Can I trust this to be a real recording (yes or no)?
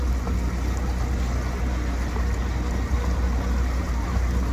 yes